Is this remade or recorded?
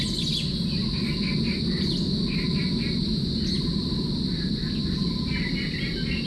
recorded